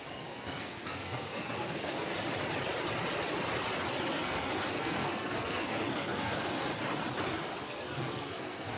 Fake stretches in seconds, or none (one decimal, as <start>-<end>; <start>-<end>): 0.0-2.1; 4.1-6.7; 7.6-8.8